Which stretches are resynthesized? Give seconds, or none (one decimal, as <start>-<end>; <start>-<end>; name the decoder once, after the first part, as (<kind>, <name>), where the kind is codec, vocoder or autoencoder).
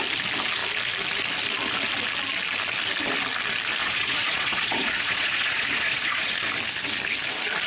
3.8-6.3 (vocoder, Vocos)